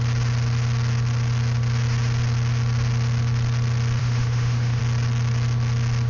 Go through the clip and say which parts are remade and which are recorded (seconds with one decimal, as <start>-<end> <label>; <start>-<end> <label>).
0.0-4.0 recorded; 4.0-4.8 remade; 4.8-6.1 recorded